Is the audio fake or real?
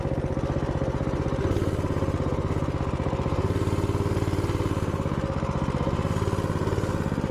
real